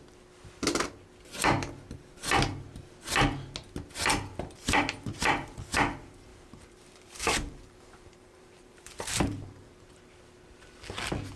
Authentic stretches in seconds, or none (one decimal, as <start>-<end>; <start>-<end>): 0.0-4.3; 4.8-6.3; 9.8-11.4